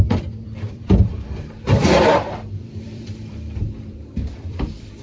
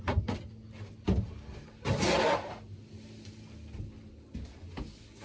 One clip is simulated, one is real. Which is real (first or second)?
second